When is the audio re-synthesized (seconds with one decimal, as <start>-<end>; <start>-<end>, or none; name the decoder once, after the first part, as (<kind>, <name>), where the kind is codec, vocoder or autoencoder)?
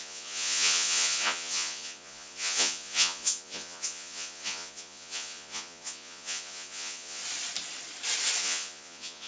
0.0-7.2 (vocoder, Vocos); 8.4-9.3